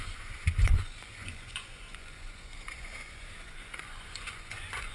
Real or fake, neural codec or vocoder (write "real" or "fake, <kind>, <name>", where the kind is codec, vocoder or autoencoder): fake, vocoder, Vocos